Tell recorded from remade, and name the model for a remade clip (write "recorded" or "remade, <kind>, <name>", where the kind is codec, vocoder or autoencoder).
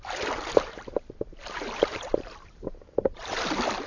remade, vocoder, BigVGAN v2